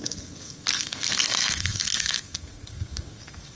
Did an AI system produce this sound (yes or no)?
yes